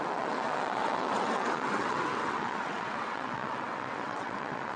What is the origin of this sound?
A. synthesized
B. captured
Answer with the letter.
A